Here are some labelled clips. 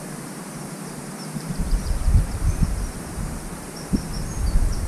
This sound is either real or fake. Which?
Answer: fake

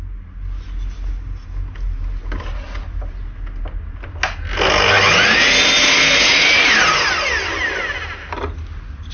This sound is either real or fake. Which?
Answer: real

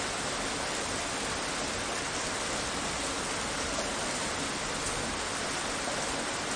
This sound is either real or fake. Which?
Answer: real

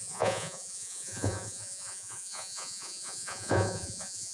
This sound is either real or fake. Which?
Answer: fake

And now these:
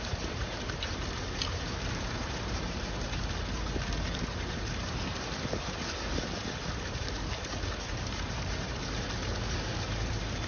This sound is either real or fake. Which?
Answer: fake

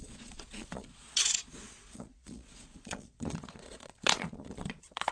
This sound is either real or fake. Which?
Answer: fake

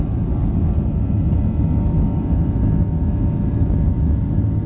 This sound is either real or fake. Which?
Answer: real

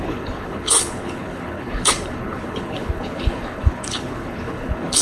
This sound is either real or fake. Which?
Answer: fake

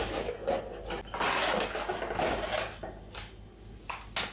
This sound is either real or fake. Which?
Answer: real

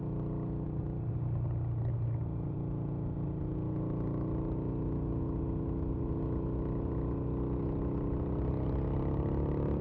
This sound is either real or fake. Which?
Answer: real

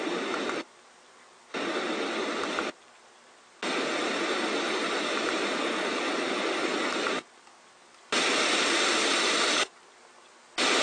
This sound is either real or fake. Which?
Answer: real